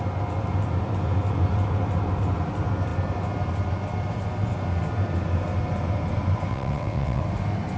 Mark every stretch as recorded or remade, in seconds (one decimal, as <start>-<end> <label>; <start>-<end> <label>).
0.0-6.5 recorded; 6.5-7.2 remade; 7.2-7.8 recorded